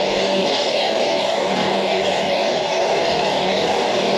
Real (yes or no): no